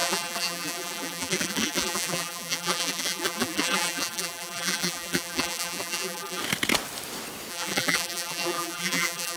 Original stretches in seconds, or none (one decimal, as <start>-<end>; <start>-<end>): 6.4-7.5

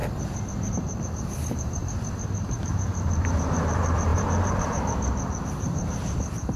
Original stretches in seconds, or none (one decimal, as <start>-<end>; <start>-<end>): 0.0-0.7

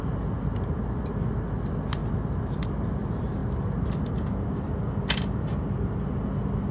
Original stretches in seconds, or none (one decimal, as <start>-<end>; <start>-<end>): 0.0-6.7

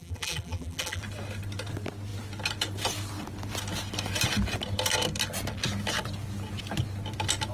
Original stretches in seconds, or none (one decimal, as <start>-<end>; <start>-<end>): 1.0-7.5

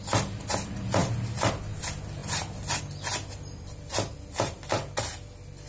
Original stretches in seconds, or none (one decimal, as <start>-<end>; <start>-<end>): 0.0-5.7